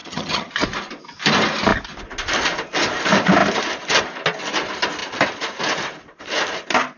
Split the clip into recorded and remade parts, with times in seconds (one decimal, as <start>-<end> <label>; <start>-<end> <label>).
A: 0.0-0.5 remade; 0.5-7.0 recorded